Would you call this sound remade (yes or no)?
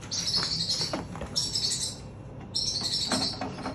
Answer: no